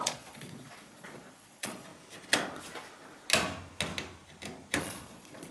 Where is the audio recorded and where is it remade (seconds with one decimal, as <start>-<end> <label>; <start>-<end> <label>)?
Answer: 0.0-1.9 remade; 1.9-4.8 recorded; 4.8-5.5 remade